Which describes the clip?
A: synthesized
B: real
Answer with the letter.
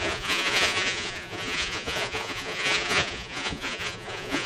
A